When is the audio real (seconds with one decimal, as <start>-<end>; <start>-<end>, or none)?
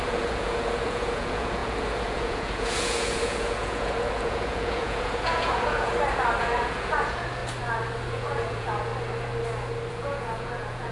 5.9-6.4; 7.4-8.1; 8.9-9.9